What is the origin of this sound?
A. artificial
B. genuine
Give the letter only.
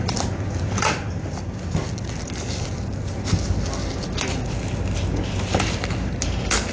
B